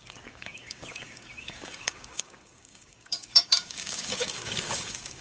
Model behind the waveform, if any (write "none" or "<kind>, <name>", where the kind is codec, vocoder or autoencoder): codec, DAC